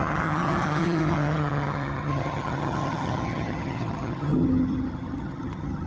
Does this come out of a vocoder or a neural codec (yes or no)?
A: yes